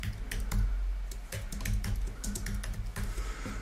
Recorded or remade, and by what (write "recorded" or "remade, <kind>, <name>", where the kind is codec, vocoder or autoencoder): recorded